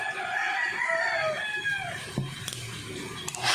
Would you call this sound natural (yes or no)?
yes